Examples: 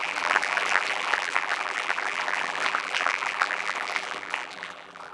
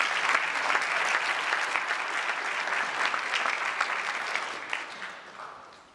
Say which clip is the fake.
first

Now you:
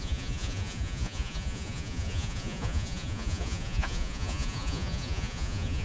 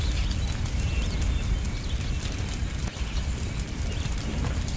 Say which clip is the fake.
first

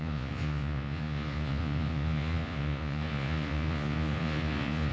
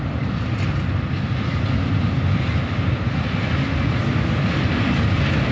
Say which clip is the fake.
first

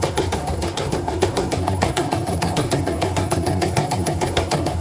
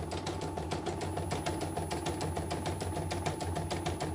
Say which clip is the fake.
first